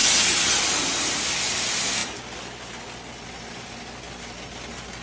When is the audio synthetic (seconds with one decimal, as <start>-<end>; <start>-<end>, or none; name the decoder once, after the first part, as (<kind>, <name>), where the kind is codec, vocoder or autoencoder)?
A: none